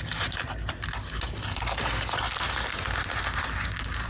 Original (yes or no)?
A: yes